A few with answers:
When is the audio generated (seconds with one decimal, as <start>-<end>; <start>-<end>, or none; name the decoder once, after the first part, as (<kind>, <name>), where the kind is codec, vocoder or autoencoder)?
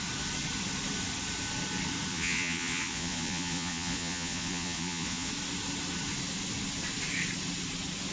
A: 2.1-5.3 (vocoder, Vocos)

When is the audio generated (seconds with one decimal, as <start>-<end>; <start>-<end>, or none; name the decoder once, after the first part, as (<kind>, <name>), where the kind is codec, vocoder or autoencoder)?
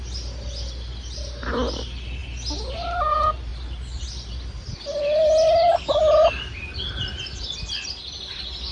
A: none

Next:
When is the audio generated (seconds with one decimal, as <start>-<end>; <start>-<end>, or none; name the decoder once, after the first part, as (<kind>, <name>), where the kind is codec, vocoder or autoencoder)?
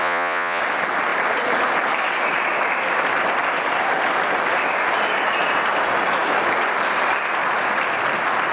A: 0.0-0.6 (vocoder, Vocos)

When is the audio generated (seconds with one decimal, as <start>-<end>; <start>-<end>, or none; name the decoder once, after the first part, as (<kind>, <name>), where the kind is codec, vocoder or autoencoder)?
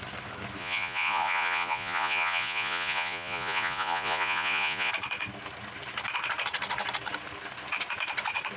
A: 0.6-4.9 (vocoder, Vocos)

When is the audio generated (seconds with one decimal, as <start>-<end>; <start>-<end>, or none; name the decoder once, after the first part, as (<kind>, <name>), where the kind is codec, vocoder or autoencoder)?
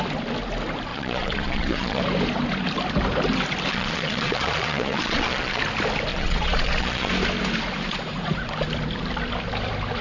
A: 0.9-2.0 (vocoder, Vocos); 3.7-5.6; 6.1-7.1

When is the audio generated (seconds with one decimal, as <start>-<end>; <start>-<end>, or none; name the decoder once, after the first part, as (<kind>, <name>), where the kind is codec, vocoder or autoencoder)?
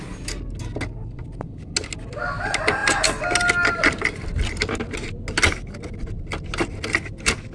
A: none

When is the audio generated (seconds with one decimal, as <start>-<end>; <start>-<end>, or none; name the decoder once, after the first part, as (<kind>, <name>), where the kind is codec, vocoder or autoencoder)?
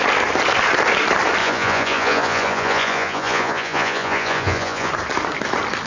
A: 1.4-4.9 (vocoder, Vocos)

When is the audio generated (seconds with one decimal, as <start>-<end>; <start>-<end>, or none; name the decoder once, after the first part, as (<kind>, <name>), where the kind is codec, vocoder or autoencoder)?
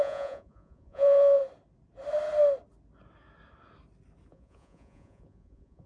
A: 0.0-1.4 (vocoder, Vocos); 4.3-5.9